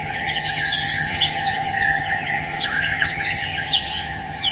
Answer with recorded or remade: remade